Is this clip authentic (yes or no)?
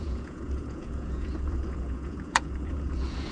no